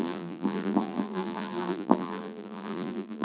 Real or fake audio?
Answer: fake